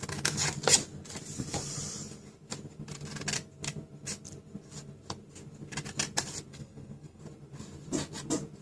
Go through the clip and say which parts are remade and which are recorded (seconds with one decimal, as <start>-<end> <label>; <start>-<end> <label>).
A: 0.0-6.5 recorded; 6.5-7.2 remade; 7.2-8.6 recorded